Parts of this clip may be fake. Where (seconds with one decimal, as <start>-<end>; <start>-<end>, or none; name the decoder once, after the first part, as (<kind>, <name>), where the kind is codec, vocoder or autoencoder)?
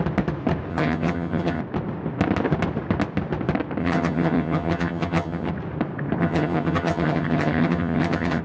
0.7-1.6 (vocoder, HiFi-GAN); 3.8-5.5; 6.2-8.4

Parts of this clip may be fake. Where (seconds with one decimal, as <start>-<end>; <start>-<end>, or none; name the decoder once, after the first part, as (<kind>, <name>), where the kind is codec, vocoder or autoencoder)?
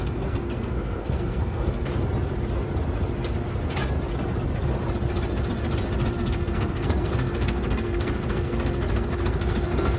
0.0-1.9 (codec, SNAC); 6.2-10.0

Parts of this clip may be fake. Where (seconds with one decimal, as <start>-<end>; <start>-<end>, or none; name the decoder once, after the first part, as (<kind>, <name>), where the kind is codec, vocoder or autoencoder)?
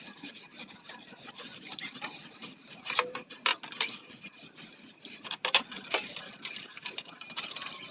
0.0-3.5 (vocoder, BigVGAN v2); 6.8-7.9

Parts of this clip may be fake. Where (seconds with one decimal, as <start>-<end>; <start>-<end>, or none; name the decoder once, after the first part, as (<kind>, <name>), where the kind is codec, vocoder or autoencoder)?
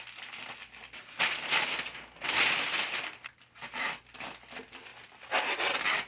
none